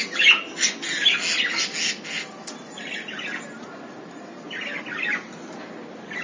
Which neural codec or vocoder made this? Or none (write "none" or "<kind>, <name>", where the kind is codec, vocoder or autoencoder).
none